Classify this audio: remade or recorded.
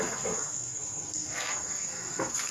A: remade